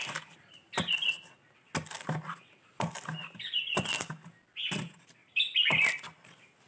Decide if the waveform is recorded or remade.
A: recorded